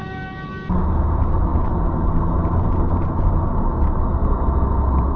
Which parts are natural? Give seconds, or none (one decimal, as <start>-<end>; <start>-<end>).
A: 0.0-5.2